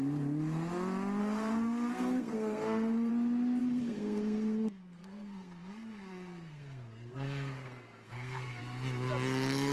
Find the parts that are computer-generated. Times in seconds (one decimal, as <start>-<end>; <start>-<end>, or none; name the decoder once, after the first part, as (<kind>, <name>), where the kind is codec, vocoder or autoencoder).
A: 1.2-3.1 (codec, SNAC); 3.6-8.6